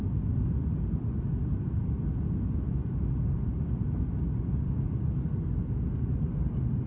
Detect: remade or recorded recorded